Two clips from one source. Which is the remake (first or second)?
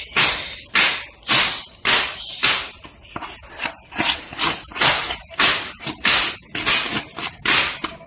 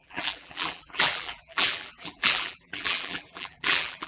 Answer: second